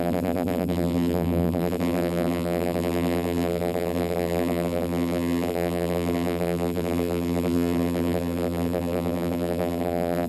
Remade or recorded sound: remade